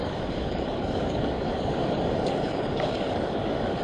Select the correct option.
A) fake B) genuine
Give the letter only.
A